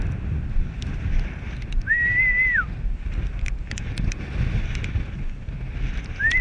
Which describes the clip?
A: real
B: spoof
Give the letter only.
A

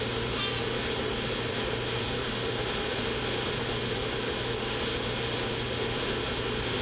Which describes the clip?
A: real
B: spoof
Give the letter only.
A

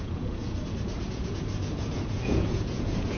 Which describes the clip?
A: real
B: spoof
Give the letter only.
B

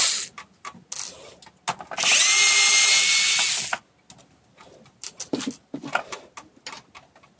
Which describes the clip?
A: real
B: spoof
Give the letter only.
A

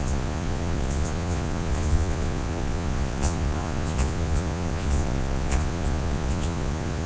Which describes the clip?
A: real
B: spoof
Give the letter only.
B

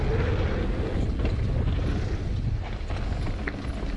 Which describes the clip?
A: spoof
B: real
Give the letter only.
B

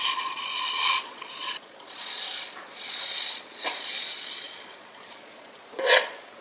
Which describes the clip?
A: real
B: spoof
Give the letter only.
B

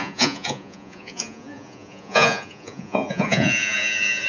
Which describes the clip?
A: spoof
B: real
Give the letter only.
A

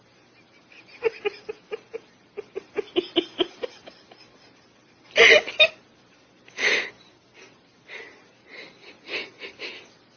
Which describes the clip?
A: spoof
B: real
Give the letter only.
B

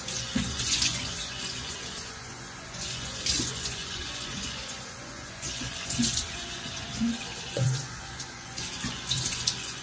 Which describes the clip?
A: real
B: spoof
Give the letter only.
B